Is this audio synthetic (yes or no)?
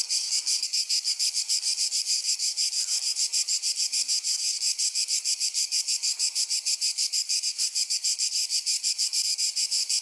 yes